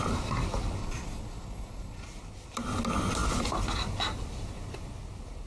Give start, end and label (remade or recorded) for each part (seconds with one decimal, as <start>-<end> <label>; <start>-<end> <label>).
0.0-0.8 recorded; 0.8-2.0 remade; 2.0-5.5 recorded